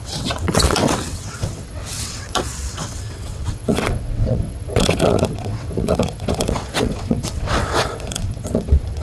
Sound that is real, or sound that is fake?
fake